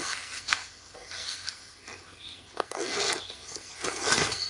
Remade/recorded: remade